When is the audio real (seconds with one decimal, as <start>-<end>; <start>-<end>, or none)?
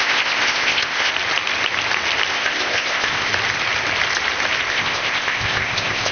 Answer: 1.1-2.3; 3.3-4.7